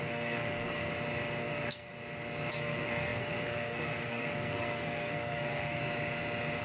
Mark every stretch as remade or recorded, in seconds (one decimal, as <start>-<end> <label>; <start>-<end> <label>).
0.0-0.9 remade; 0.9-1.4 recorded; 1.4-1.9 remade; 1.9-2.5 recorded; 2.5-5.8 remade; 5.8-6.6 recorded